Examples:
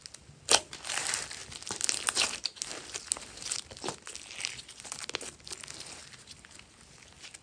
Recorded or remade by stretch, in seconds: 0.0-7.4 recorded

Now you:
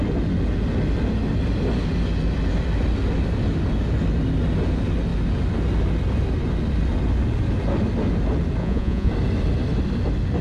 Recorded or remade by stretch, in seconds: 0.0-8.6 recorded; 8.6-9.1 remade; 9.1-10.4 recorded

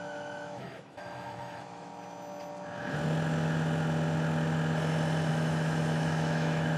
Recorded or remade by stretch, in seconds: 0.0-1.9 remade; 1.9-5.3 recorded; 5.3-6.8 remade

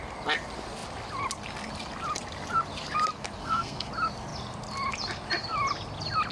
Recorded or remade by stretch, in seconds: 0.0-3.4 recorded; 3.4-3.9 remade; 3.9-6.3 recorded

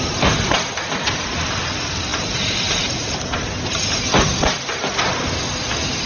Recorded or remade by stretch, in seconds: 0.0-6.1 recorded

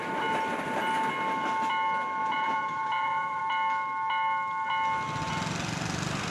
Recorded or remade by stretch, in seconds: 0.0-2.2 recorded; 2.2-3.4 remade; 3.4-6.3 recorded